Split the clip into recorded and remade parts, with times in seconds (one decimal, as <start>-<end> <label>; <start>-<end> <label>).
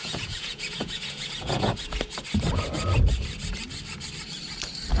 0.0-1.7 remade; 1.7-5.0 recorded